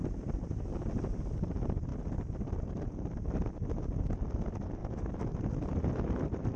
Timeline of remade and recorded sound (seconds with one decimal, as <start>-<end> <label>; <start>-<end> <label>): 0.0-0.7 recorded; 0.7-1.9 remade; 1.9-2.6 recorded; 2.6-4.8 remade; 4.8-5.6 recorded; 5.6-6.6 remade